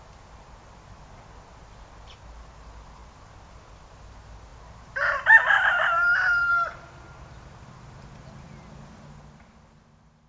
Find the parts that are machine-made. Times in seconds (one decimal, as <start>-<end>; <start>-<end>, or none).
none